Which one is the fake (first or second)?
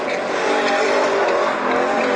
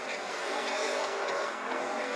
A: second